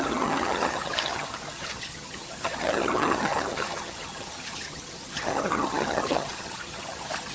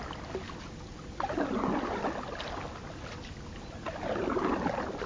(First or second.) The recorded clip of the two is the second